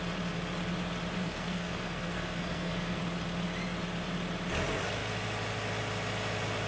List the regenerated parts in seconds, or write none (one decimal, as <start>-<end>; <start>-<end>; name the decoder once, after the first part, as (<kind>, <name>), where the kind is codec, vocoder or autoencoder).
1.2-3.0 (codec, SNAC)